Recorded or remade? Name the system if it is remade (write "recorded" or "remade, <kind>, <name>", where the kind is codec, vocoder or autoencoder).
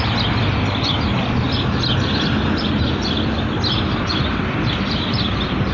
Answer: recorded